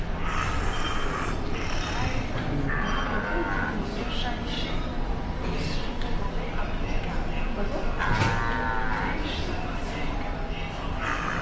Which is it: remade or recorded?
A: recorded